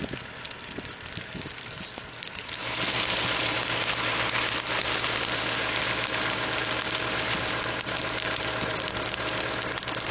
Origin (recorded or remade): recorded